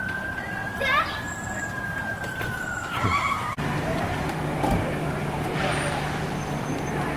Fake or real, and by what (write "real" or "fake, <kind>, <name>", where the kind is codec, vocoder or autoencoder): fake, vocoder, BigVGAN v2